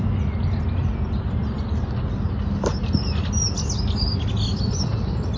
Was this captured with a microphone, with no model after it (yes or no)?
yes